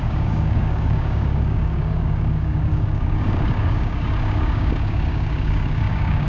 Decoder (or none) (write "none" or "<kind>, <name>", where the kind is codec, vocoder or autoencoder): codec, DAC